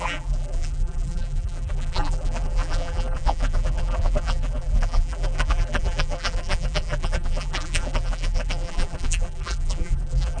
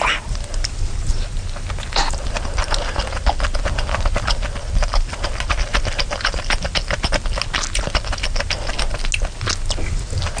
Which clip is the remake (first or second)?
first